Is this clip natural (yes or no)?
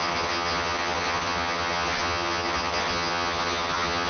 no